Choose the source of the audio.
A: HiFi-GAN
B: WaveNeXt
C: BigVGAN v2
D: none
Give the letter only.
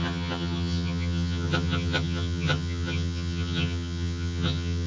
A